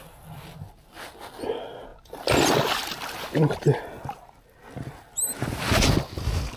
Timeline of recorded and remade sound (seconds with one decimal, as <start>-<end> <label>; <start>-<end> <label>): 0.0-6.6 recorded